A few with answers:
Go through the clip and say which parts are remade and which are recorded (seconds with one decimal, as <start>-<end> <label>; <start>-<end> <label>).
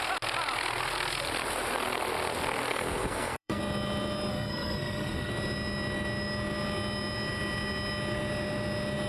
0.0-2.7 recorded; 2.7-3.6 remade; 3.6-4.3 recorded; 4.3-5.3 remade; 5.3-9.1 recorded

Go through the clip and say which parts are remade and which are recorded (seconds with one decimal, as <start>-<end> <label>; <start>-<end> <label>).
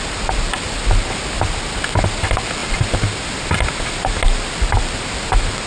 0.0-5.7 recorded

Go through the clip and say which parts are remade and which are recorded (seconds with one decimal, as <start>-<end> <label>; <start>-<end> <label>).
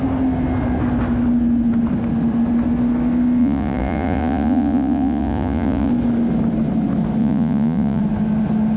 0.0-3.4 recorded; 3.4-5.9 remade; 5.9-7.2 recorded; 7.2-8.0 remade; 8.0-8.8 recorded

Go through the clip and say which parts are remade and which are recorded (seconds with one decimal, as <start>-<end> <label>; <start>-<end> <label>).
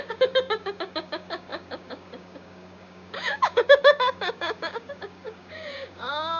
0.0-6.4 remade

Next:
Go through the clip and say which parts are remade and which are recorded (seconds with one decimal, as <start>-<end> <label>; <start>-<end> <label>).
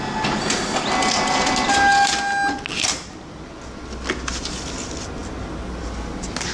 0.0-6.5 recorded